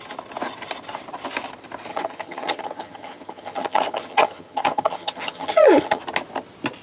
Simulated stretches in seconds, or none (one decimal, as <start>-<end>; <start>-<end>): 1.9-6.0